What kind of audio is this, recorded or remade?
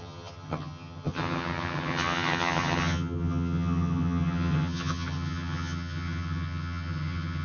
remade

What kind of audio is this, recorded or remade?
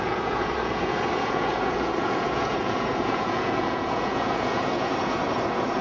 remade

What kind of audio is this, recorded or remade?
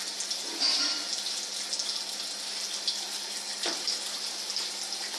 recorded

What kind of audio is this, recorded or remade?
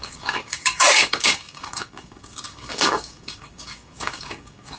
remade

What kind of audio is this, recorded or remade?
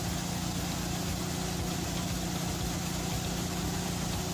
recorded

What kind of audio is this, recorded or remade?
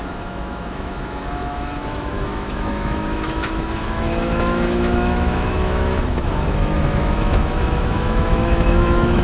remade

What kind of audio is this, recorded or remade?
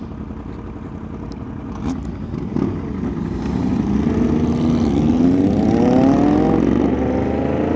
recorded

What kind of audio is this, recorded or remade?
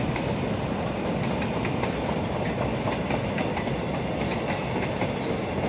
recorded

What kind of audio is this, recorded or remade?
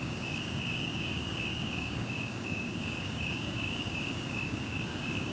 remade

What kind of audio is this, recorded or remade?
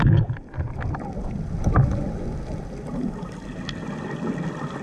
recorded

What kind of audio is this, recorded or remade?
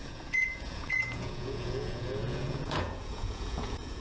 remade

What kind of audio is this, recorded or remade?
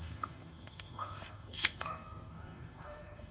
remade